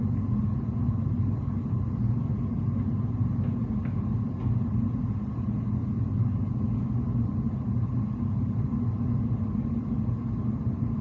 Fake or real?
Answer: real